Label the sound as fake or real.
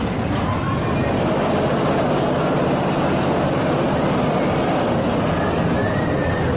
real